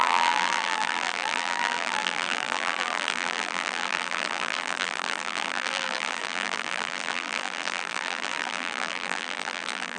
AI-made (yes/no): yes